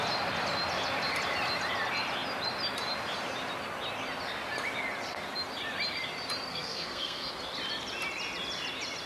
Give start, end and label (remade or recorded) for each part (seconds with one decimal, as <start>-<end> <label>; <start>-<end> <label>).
0.0-6.5 recorded; 6.5-7.3 remade; 7.3-9.1 recorded